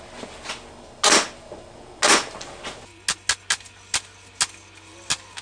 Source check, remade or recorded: recorded